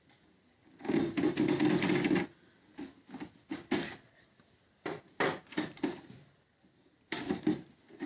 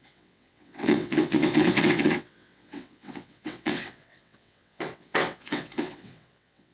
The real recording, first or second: first